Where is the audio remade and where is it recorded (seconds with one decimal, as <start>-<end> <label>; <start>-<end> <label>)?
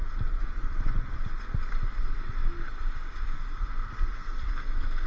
0.0-5.1 recorded